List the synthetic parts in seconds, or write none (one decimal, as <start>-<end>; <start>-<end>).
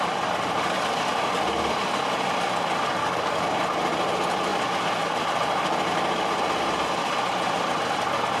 3.0-3.6